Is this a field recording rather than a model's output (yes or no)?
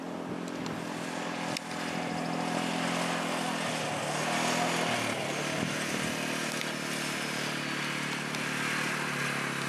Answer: yes